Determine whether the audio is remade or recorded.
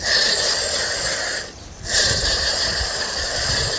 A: recorded